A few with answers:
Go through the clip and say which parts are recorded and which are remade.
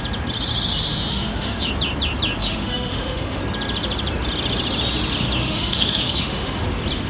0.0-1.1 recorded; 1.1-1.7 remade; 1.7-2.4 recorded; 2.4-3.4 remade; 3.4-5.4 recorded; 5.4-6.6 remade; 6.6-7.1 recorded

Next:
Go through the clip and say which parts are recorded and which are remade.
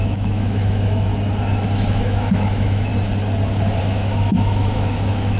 0.0-1.1 remade; 1.1-1.9 recorded; 1.9-2.9 remade; 2.9-3.8 recorded; 3.8-5.4 remade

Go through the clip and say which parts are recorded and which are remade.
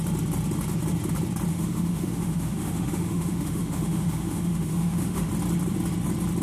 0.0-1.5 recorded; 1.5-5.3 remade; 5.3-6.4 recorded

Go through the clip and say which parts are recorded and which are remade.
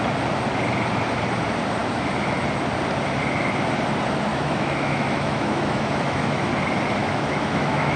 0.0-1.8 recorded; 1.8-2.4 remade; 2.4-4.3 recorded; 4.3-6.5 remade; 6.5-7.0 recorded; 7.0-8.0 remade